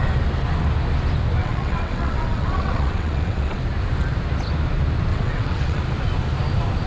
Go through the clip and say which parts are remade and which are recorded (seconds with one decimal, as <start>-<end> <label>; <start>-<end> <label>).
0.0-1.4 recorded; 1.4-3.6 remade; 3.6-5.1 recorded; 5.1-5.8 remade; 5.8-6.9 recorded

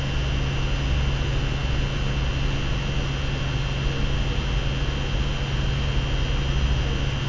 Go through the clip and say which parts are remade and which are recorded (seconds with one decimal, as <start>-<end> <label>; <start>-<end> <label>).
0.0-7.3 recorded

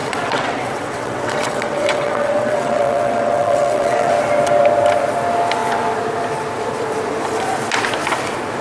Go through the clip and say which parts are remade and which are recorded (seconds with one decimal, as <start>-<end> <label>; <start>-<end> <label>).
0.0-4.1 remade; 4.1-8.6 recorded

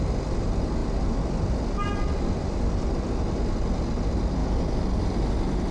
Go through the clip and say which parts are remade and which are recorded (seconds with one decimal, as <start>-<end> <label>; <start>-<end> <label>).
0.0-5.7 recorded

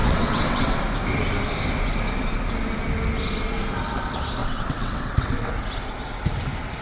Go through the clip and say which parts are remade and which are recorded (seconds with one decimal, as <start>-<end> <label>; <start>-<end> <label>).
0.0-0.8 remade; 0.8-4.4 recorded; 4.4-5.5 remade; 5.5-6.8 recorded